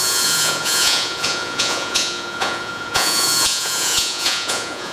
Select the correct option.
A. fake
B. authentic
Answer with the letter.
A